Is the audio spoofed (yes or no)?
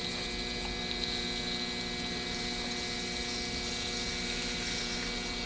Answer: no